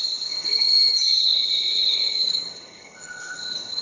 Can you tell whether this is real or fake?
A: fake